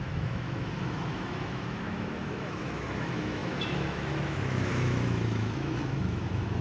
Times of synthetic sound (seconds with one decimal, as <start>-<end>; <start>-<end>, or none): 0.0-6.6